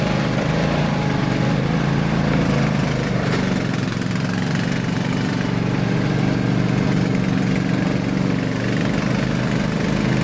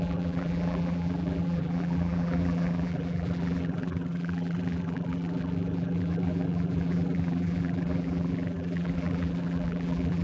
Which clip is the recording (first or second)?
first